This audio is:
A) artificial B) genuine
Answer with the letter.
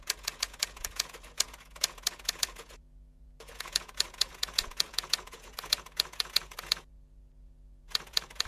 A